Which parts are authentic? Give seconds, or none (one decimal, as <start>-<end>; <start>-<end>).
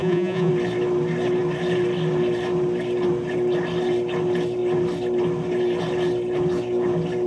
0.5-7.3